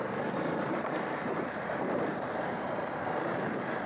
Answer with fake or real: fake